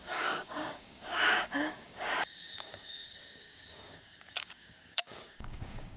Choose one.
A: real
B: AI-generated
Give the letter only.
B